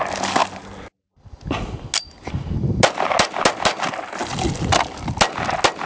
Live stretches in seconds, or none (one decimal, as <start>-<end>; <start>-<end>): 0.0-5.9